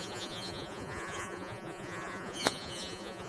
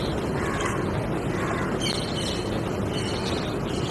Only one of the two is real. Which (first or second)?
second